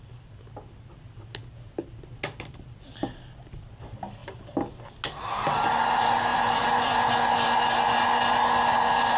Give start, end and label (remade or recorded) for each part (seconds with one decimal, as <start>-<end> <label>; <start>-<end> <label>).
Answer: 0.0-4.2 recorded; 4.2-4.8 remade; 4.8-6.3 recorded; 6.3-7.1 remade; 7.1-9.2 recorded